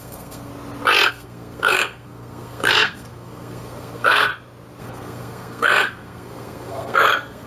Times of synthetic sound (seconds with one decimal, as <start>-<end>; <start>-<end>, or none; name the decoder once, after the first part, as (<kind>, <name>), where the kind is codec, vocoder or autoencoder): 0.0-0.5 (codec, SNAC); 1.1-4.3; 4.8-7.5